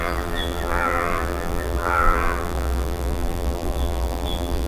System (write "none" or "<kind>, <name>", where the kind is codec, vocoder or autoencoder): vocoder, BigVGAN v2